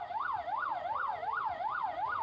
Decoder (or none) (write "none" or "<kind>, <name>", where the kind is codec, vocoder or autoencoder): none